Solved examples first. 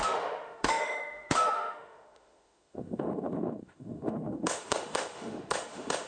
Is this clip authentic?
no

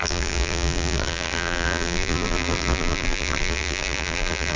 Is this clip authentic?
no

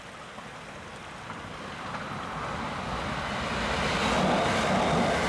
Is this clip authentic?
yes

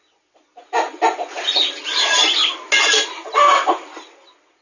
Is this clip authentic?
yes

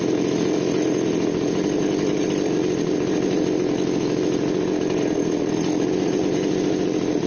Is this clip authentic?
yes